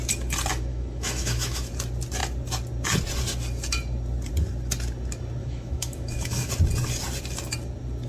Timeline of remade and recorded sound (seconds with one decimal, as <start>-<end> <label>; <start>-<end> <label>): 0.0-0.7 recorded; 0.7-1.7 remade; 1.7-5.4 recorded; 5.4-6.5 remade; 6.5-8.1 recorded